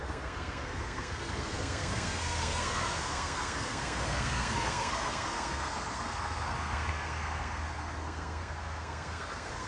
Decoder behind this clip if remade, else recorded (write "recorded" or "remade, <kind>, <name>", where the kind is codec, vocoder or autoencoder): remade, codec, SNAC